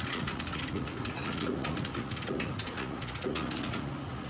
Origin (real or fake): fake